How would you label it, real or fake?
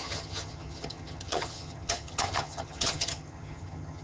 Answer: fake